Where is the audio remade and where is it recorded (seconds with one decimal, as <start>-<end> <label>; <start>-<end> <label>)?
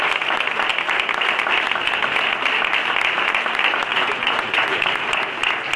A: 0.0-3.9 recorded; 3.9-4.8 remade; 4.8-5.8 recorded